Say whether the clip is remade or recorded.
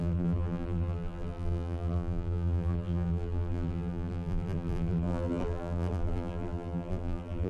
remade